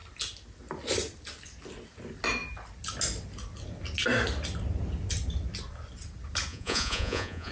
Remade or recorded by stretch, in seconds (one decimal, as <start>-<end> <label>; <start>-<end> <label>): 0.0-6.5 recorded; 6.5-7.5 remade